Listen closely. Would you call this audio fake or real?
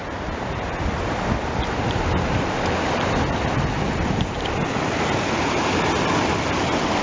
real